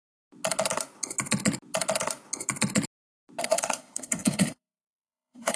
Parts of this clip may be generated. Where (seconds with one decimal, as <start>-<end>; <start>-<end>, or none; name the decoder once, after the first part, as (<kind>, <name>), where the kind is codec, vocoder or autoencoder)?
3.4-5.6 (codec, SNAC)